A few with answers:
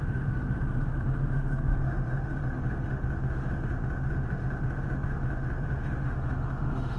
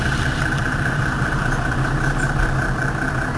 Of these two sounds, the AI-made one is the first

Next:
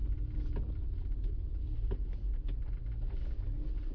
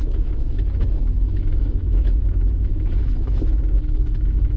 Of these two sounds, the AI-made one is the second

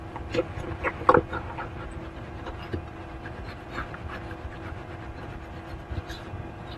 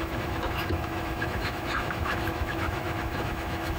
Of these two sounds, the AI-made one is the second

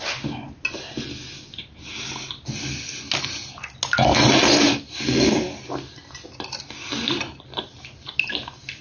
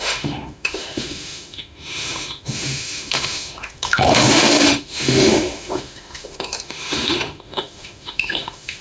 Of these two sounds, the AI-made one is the second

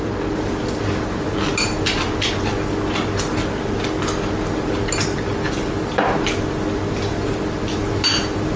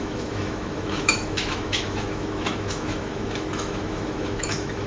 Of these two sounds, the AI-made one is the second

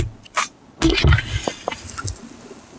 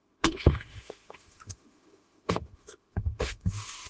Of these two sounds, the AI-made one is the second